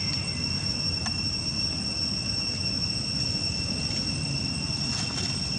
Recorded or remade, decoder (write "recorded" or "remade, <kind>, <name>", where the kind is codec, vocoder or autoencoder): recorded